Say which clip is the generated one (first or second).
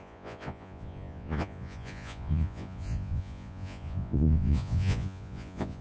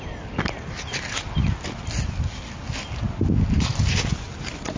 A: first